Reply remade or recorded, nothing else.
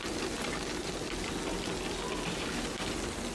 recorded